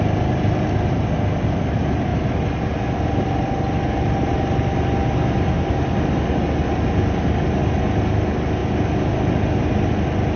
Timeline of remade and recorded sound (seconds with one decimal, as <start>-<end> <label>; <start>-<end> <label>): 0.0-10.4 recorded